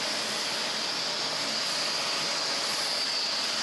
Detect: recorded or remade recorded